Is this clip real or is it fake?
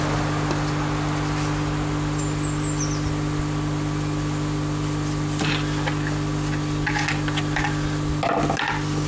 real